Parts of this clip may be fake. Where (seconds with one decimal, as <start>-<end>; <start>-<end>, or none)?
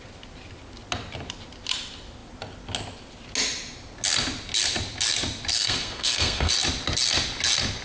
5.5-6.5